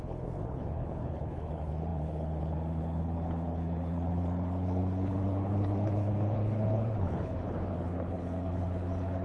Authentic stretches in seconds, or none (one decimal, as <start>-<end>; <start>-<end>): none